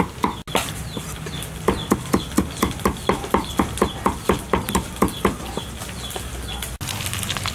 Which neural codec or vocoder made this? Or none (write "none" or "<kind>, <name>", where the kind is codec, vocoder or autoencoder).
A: none